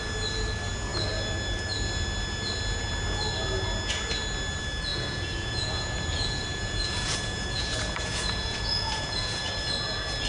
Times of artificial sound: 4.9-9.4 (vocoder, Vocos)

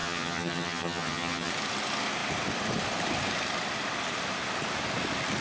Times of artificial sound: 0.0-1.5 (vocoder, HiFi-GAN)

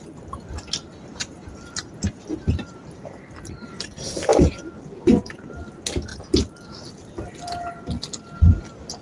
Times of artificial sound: none

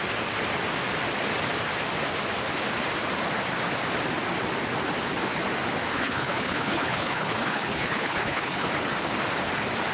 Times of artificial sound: 5.9-8.7 (codec, HILCodec)